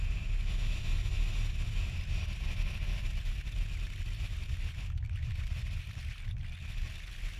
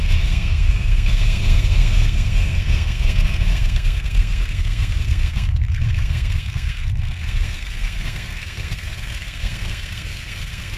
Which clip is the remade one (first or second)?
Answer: second